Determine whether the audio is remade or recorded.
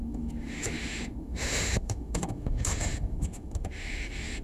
remade